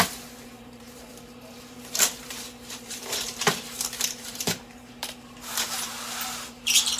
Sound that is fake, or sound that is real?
fake